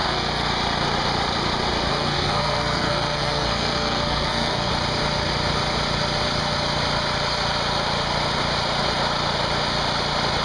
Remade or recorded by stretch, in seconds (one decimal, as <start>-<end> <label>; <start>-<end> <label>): 0.0-0.5 remade; 0.5-1.9 recorded; 1.9-4.7 remade; 4.7-10.4 recorded